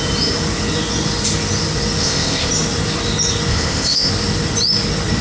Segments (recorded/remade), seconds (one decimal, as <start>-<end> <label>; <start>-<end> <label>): 0.0-2.0 recorded; 2.0-2.5 remade; 2.5-3.5 recorded; 3.5-4.1 remade; 4.1-5.2 recorded